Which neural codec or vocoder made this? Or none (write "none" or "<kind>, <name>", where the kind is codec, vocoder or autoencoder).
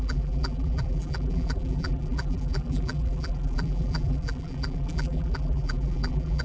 vocoder, BigVGAN v2